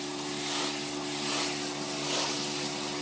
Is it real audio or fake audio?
real